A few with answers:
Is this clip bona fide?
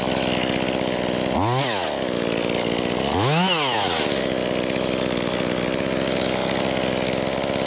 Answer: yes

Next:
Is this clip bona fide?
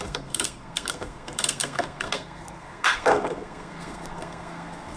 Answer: no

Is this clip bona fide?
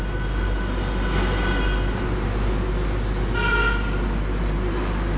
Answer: yes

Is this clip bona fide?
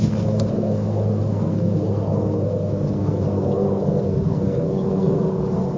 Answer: no